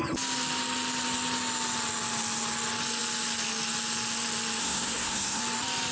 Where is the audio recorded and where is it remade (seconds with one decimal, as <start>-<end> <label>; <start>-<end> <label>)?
0.0-4.6 recorded; 4.6-5.4 remade; 5.4-5.9 recorded